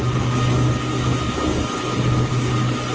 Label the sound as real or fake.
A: real